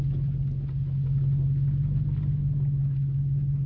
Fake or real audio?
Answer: real